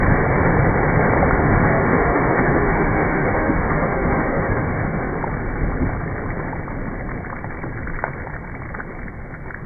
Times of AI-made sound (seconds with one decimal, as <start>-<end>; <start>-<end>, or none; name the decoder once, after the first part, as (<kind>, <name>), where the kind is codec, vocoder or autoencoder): 1.4-5.1 (autoencoder, DAC-VAE)